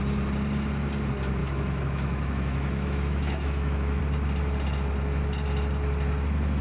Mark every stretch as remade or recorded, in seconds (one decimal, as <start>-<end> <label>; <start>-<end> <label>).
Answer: 0.0-1.4 recorded; 1.4-4.0 remade; 4.0-6.6 recorded